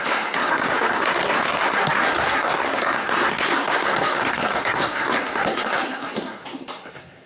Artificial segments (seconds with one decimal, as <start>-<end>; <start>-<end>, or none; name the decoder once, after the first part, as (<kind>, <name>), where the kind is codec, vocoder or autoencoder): 0.0-7.3 (codec, SNAC)